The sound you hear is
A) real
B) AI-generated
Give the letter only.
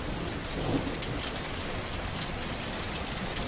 A